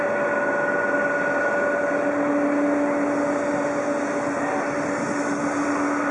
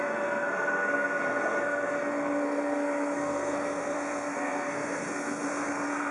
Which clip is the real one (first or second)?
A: first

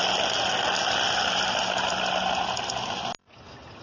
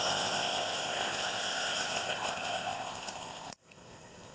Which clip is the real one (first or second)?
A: first